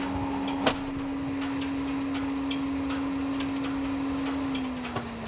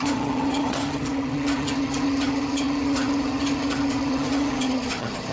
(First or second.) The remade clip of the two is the second